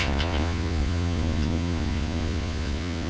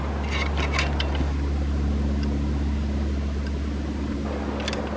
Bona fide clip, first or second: second